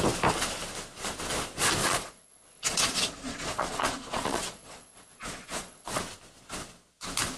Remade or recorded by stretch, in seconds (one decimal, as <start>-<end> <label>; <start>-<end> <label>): 0.0-1.8 recorded; 1.8-6.0 remade; 6.0-7.4 recorded

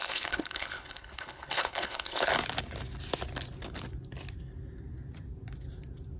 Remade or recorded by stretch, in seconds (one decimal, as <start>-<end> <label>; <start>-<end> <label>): 0.0-2.3 remade; 2.3-6.2 recorded

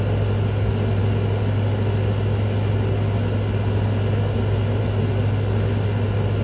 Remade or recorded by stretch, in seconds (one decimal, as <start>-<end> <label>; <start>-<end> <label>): 0.0-6.4 recorded

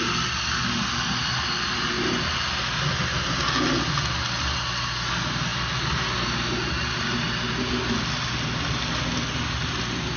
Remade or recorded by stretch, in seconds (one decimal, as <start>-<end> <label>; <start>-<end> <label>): 0.0-10.2 recorded

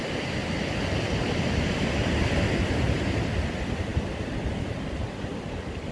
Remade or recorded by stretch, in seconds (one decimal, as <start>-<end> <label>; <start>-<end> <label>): 0.0-5.9 recorded

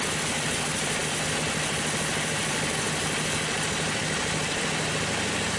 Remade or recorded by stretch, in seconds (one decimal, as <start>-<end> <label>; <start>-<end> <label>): 0.0-5.6 recorded